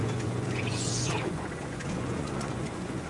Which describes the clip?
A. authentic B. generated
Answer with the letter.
B